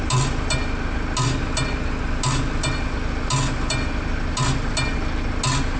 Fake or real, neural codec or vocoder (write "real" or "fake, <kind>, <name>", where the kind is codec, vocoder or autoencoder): real